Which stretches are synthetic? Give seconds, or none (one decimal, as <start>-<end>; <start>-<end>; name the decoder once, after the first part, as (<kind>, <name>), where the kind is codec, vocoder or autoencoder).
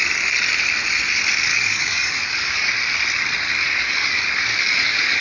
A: 1.5-2.7 (codec, DAC); 3.6-5.2